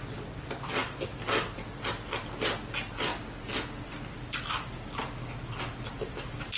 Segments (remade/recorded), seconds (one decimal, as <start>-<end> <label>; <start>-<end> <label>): 0.0-6.6 recorded